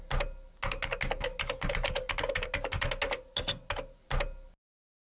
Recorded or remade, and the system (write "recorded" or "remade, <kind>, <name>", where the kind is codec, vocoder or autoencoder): recorded